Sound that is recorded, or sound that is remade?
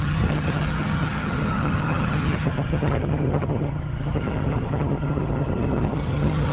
remade